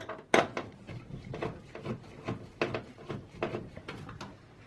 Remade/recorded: recorded